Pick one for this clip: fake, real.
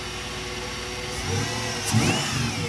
real